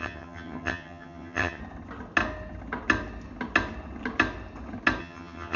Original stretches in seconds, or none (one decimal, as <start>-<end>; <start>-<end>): 1.6-5.0